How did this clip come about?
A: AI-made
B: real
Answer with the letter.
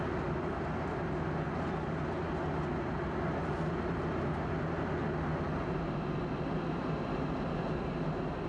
B